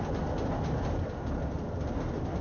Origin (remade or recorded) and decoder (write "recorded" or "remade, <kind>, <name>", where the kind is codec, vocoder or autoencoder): recorded